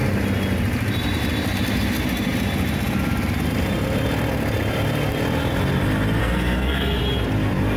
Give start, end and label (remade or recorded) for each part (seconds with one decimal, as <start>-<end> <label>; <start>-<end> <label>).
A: 0.0-6.2 recorded; 6.2-7.0 remade; 7.0-7.8 recorded